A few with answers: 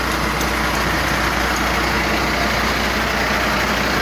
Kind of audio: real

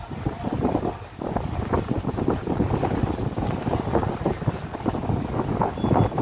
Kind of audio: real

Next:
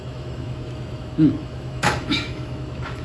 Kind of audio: fake